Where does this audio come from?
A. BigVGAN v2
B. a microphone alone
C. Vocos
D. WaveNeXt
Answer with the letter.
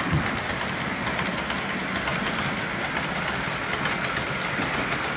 B